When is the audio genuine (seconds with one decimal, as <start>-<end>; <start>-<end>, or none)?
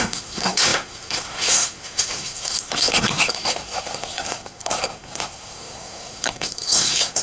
none